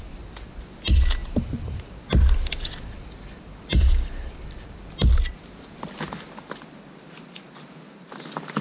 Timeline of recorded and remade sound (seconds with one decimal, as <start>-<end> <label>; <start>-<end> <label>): 0.0-8.6 recorded